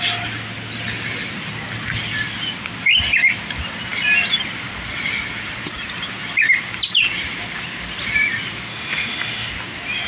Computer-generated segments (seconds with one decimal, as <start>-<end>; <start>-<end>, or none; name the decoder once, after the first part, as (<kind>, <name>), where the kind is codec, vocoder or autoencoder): 8.7-9.5 (autoencoder, DAC-VAE)